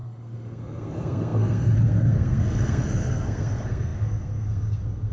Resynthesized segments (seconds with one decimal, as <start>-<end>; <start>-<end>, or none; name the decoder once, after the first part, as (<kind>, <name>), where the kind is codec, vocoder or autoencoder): 0.0-5.1 (codec, SNAC)